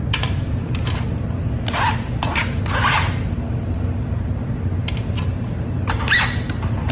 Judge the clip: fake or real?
real